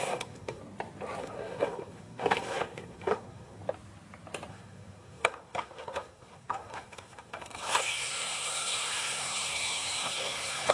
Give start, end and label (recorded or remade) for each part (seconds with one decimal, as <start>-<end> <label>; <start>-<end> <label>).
0.0-0.6 remade; 0.6-1.2 recorded; 1.2-3.6 remade; 3.6-4.5 recorded; 4.5-10.7 remade